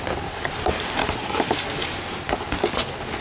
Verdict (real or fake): real